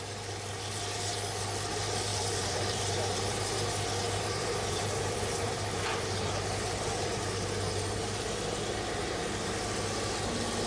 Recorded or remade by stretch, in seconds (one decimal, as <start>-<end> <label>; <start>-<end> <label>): 0.0-2.1 recorded; 2.1-5.9 remade; 5.9-10.7 recorded